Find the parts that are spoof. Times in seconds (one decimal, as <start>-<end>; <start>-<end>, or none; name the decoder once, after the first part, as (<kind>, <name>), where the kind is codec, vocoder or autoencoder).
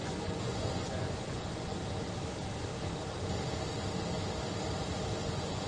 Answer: 0.0-1.8 (vocoder, Vocos); 5.2-5.7